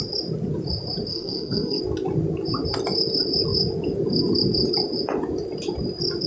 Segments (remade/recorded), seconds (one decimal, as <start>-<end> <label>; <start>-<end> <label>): 0.0-1.1 recorded; 1.1-1.8 remade; 1.8-6.3 recorded